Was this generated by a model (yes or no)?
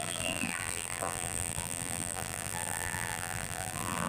yes